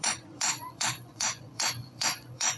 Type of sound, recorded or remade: remade